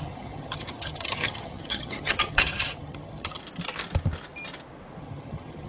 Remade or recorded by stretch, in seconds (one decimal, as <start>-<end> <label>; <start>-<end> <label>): 0.0-3.4 remade; 3.4-5.0 recorded; 5.0-5.7 remade